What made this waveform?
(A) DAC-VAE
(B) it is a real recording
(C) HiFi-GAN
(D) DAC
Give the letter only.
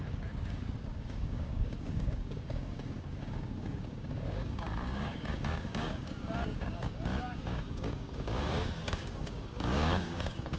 D